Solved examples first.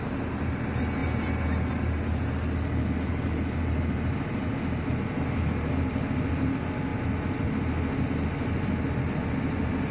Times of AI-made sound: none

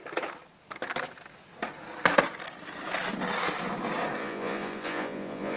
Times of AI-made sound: 4.2-5.6

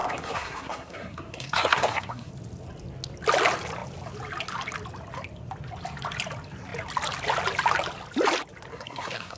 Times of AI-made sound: 0.0-2.3; 8.7-9.4